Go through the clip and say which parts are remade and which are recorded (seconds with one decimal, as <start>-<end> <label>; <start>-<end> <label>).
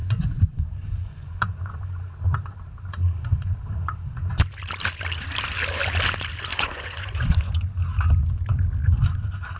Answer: 0.0-1.8 remade; 1.8-6.5 recorded; 6.5-7.5 remade; 7.5-9.6 recorded